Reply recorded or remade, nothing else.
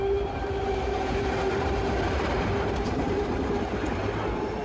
remade